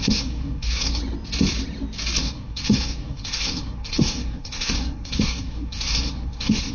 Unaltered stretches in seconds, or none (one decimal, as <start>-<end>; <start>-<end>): 1.0-2.2